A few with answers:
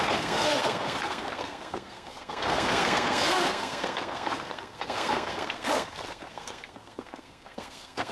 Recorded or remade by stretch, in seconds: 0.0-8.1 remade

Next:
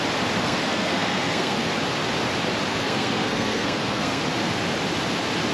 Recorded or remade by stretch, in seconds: 0.0-0.4 recorded; 0.4-1.7 remade; 1.7-2.7 recorded; 2.7-4.2 remade; 4.2-5.5 recorded

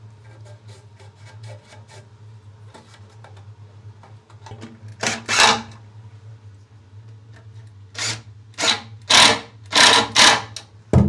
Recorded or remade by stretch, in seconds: 0.0-11.1 recorded

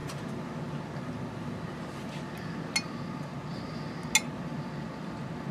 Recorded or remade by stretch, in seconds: 0.0-5.5 recorded